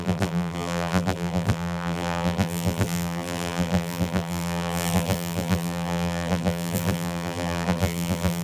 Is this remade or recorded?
remade